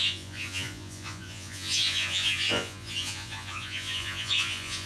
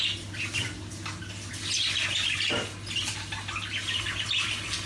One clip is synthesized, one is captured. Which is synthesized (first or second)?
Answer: first